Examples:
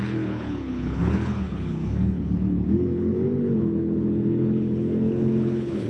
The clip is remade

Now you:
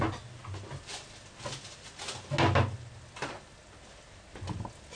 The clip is recorded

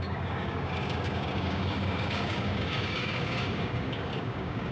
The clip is remade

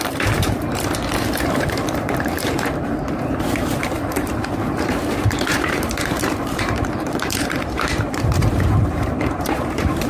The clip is remade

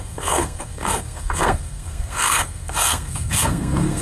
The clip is remade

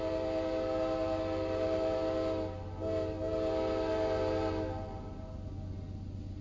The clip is recorded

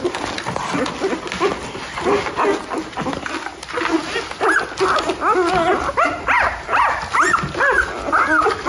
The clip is recorded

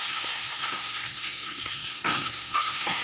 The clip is remade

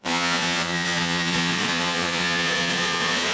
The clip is remade